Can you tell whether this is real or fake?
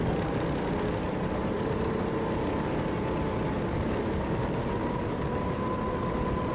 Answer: real